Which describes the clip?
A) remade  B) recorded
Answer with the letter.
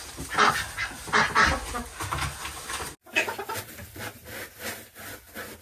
B